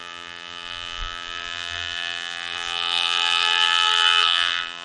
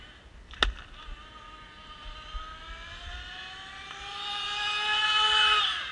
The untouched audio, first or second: second